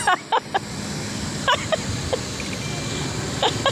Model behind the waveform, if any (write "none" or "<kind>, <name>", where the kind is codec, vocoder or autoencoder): none